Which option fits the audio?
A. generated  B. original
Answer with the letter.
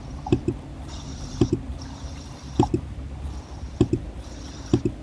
B